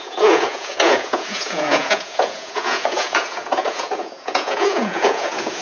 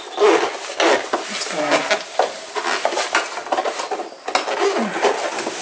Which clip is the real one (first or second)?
second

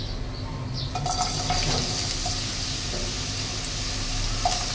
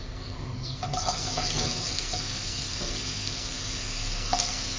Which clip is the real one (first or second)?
first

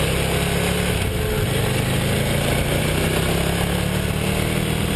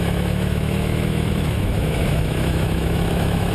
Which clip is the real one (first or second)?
first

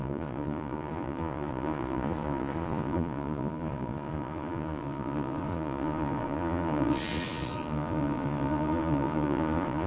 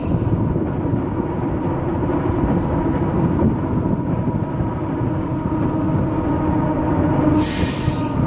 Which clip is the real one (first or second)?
second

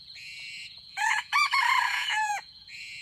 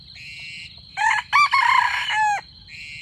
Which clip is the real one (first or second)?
second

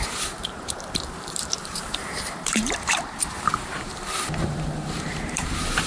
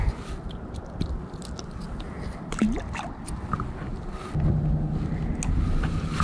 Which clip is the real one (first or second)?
second